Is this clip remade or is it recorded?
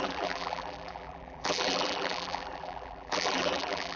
remade